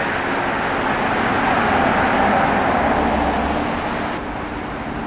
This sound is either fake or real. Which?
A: real